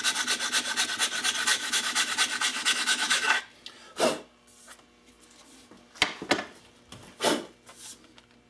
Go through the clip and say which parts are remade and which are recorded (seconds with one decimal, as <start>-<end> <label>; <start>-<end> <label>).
0.0-1.5 recorded; 1.5-2.1 remade; 2.1-2.5 recorded; 2.5-3.4 remade; 3.4-8.5 recorded